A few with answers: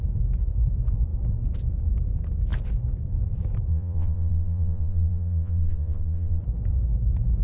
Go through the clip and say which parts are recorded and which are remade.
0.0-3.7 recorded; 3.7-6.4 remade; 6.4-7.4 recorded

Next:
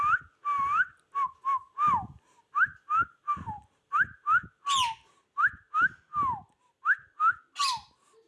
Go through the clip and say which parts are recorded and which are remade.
0.0-8.3 recorded

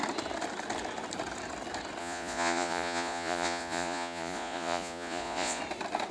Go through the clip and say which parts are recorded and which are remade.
0.0-2.0 recorded; 2.0-5.6 remade; 5.6-6.1 recorded

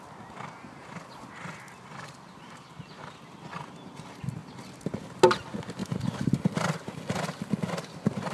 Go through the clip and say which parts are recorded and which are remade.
0.0-8.3 recorded

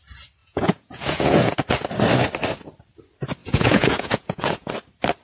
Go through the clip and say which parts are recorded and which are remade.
0.0-0.4 recorded; 0.4-1.6 remade; 1.6-3.4 recorded; 3.4-4.7 remade; 4.7-5.2 recorded